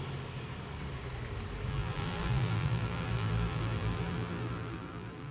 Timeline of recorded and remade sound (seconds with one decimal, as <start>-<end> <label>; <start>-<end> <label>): 0.0-1.7 recorded; 1.7-5.3 remade